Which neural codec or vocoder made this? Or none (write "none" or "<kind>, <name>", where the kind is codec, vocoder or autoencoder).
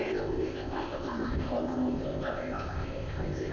codec, ZipCodec